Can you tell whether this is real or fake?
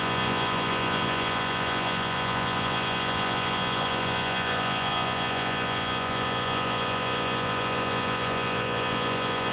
fake